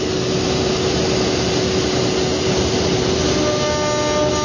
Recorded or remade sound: recorded